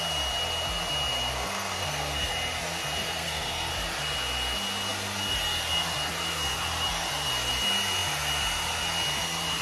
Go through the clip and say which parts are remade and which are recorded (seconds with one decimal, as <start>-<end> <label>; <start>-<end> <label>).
0.0-1.3 recorded; 1.3-2.3 remade; 2.3-3.0 recorded; 3.0-3.7 remade; 3.7-9.6 recorded